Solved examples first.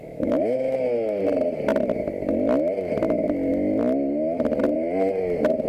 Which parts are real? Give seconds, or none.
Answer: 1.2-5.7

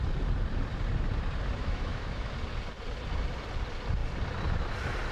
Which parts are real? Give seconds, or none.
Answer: 0.0-1.6; 2.3-5.1

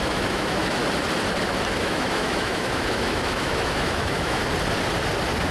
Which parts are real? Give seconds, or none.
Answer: 0.8-1.8; 4.4-5.5

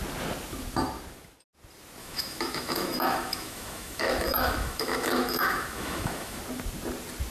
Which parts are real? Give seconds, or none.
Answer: 0.0-2.0; 6.4-7.3